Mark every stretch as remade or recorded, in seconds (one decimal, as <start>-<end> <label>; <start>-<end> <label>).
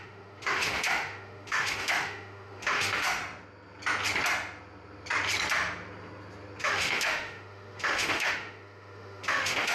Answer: 0.0-3.2 remade; 3.2-6.6 recorded; 6.6-9.7 remade